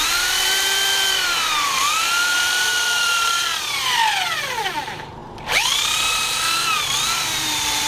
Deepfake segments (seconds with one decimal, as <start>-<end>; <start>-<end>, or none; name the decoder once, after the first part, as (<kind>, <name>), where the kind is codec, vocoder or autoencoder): 0.0-3.5 (vocoder, BigVGAN v2); 4.6-7.9